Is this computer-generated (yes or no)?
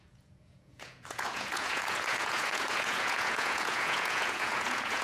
yes